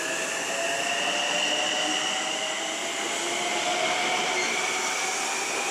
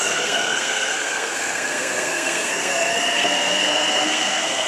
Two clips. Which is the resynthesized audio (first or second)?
second